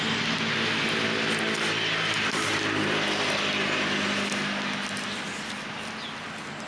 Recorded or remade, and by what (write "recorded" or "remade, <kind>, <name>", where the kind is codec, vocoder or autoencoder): recorded